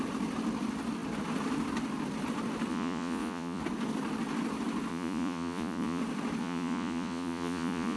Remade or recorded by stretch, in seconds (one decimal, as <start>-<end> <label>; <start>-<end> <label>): 0.0-2.7 recorded; 2.7-3.6 remade; 3.6-4.9 recorded; 4.9-6.0 remade; 6.0-6.4 recorded; 6.4-8.0 remade